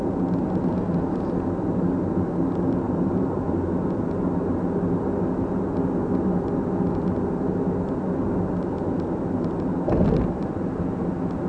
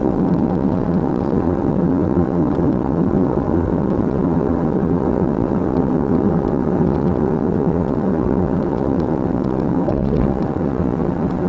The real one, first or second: first